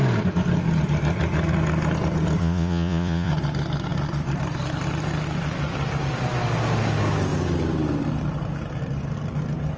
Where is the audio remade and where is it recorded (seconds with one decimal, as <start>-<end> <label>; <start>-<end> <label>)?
0.0-2.4 recorded; 2.4-3.3 remade; 3.3-9.8 recorded